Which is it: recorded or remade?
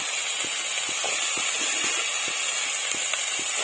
recorded